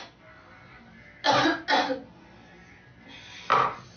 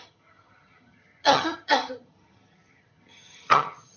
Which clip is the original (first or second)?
first